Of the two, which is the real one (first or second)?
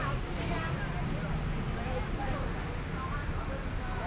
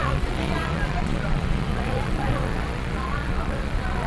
first